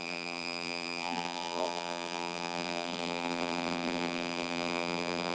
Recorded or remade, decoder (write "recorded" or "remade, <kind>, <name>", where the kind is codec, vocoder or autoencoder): remade, vocoder, BigVGAN v2